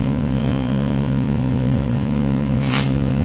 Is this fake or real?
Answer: fake